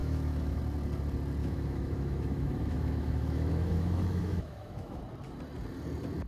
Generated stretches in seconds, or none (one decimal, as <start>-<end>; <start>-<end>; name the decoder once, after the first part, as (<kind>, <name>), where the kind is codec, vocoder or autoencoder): 0.0-0.6 (autoencoder, DAC-VAE); 1.4-5.0